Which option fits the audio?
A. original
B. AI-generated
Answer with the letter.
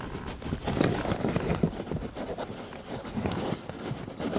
A